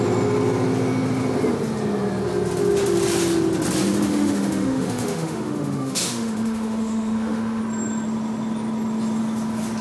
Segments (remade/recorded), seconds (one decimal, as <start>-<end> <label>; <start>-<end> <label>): 0.0-4.1 recorded; 4.1-7.6 remade; 7.6-9.8 recorded